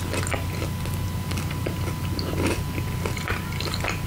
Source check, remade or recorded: recorded